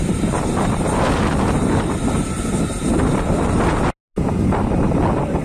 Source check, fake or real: real